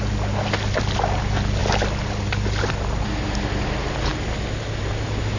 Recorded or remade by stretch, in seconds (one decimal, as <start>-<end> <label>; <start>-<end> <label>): 0.0-5.4 recorded